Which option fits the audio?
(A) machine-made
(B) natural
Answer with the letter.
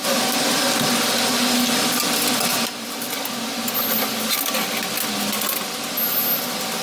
B